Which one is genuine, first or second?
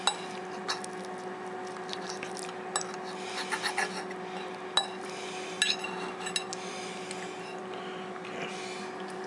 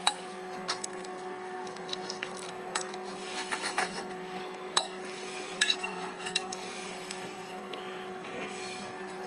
first